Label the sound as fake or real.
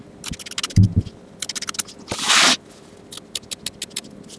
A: real